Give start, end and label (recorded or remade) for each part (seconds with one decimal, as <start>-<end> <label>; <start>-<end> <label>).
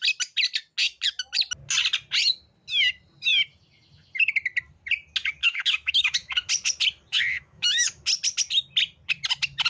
0.0-5.4 recorded; 5.4-6.5 remade; 6.5-7.1 recorded; 7.1-7.9 remade; 7.9-9.7 recorded